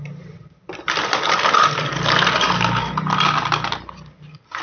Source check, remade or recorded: recorded